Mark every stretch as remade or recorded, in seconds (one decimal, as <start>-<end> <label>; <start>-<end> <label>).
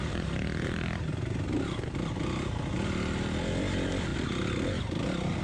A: 0.0-4.1 remade; 4.1-5.4 recorded